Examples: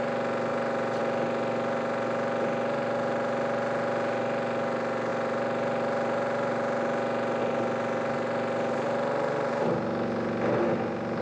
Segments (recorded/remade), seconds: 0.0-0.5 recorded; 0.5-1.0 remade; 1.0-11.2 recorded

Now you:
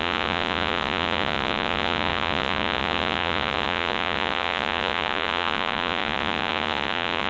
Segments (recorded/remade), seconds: 0.0-7.3 remade

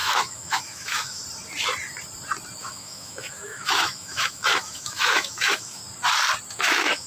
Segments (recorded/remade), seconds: 0.0-1.2 remade; 1.2-2.6 recorded; 2.6-5.8 remade; 5.8-6.5 recorded; 6.5-7.1 remade

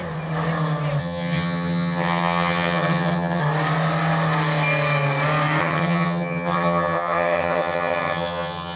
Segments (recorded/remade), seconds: 0.0-1.0 recorded; 1.0-3.4 remade; 3.4-5.6 recorded; 5.6-8.8 remade